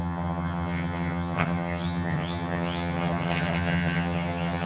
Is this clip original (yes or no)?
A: no